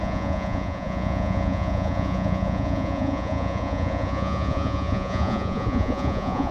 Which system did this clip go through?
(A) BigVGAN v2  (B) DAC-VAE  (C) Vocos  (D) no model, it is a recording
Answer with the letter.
C